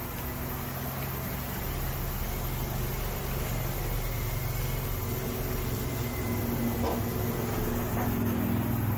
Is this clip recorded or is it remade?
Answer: recorded